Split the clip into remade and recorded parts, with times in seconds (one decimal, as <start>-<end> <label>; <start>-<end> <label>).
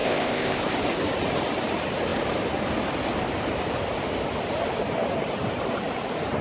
0.0-0.6 remade; 0.6-6.4 recorded